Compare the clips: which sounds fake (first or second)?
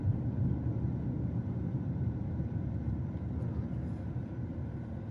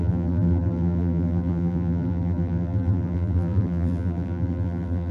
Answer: second